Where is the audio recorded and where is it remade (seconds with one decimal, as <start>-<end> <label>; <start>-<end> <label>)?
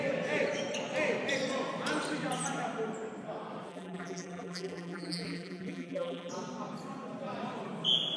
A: 0.0-3.7 recorded; 3.7-6.3 remade; 6.3-8.2 recorded